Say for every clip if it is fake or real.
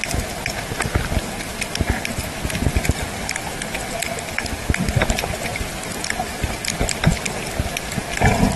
real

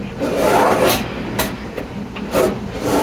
real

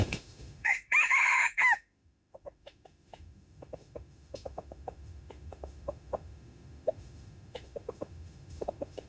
fake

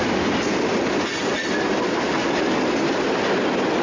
real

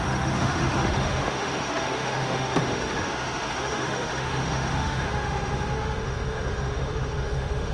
fake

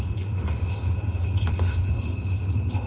fake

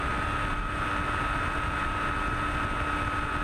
real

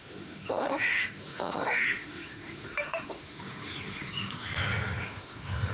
fake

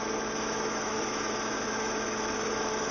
fake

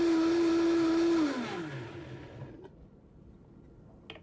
real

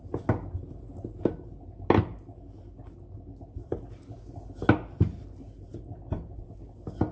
real